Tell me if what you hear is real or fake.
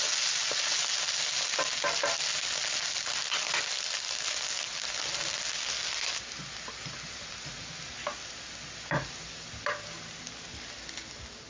real